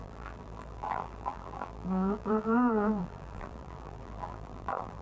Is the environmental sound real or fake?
fake